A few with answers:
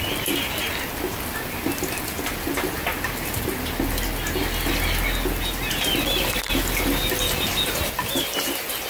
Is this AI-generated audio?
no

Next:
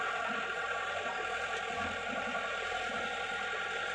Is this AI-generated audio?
no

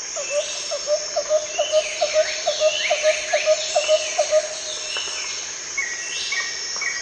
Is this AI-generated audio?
no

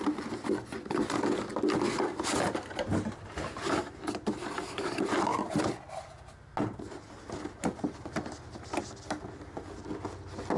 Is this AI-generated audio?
no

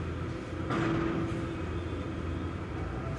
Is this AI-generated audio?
no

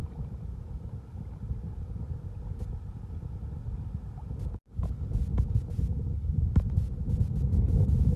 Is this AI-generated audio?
no